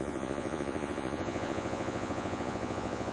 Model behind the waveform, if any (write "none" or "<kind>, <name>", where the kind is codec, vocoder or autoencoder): vocoder, Vocos